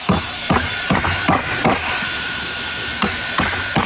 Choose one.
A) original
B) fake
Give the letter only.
B